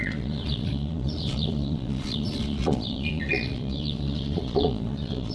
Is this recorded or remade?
remade